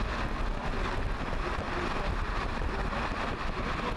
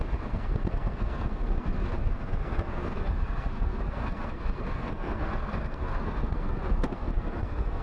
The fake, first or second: second